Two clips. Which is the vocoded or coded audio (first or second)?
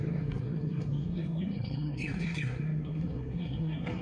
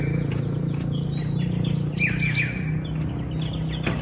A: first